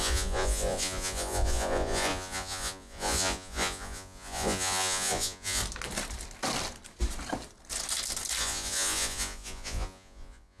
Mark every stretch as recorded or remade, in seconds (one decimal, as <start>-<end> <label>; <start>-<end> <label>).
0.0-5.6 remade; 5.6-8.4 recorded; 8.4-10.6 remade